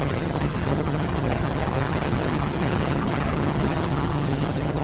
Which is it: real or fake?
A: fake